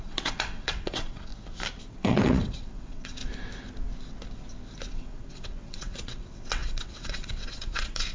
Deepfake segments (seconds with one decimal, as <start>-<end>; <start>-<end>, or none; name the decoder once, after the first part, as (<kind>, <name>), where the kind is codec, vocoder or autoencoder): 0.0-1.3 (vocoder, WaveNeXt); 1.9-3.2; 4.9-8.1